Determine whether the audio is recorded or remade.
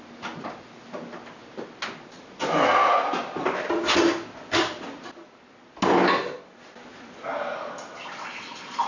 recorded